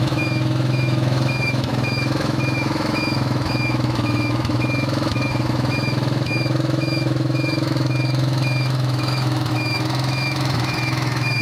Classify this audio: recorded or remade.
remade